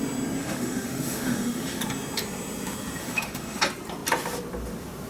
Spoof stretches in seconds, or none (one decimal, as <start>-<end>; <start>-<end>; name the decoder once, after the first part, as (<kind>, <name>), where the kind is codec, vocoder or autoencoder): 0.4-1.8 (autoencoder, DAC-VAE); 3.0-3.6

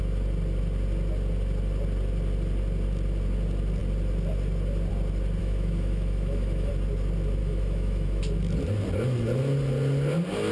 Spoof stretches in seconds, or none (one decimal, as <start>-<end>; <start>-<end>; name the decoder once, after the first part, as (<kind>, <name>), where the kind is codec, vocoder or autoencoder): 5.4-6.7 (autoencoder, DAC-VAE); 7.4-8.2

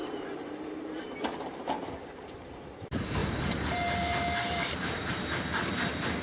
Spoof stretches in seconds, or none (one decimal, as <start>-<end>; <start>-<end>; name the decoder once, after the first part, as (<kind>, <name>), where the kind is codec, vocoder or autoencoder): 0.0-1.9 (vocoder, BigVGAN v2); 3.2-5.1